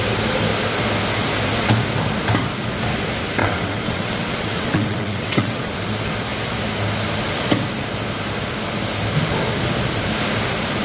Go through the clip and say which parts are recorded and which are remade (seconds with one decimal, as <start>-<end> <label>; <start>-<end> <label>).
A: 0.0-3.4 recorded; 3.4-5.7 remade; 5.7-10.8 recorded